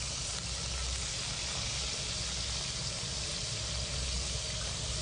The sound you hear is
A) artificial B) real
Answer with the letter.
B